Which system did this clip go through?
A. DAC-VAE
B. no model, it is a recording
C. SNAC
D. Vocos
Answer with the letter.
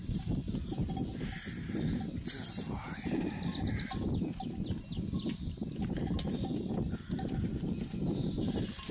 B